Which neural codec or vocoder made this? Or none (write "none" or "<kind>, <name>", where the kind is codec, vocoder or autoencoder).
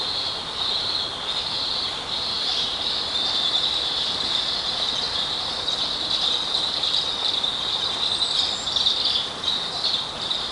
none